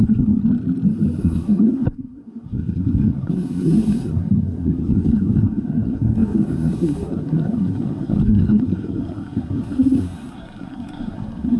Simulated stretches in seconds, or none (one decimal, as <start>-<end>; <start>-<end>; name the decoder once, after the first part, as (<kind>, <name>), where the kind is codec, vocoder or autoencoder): 0.0-0.4 (codec, SNAC); 1.2-11.6